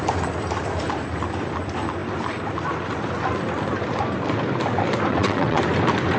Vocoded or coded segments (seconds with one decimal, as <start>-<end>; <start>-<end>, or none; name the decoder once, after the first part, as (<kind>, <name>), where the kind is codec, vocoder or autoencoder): 5.1-5.6 (vocoder, WaveNeXt)